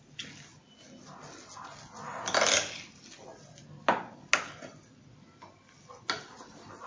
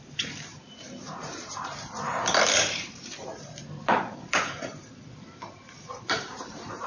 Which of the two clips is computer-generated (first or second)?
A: second